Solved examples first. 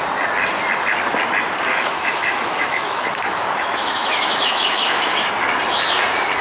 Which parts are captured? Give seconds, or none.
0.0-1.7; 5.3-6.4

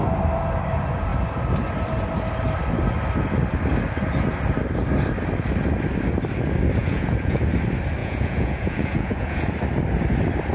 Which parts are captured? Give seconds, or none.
0.0-6.8; 7.4-8.0; 9.5-10.5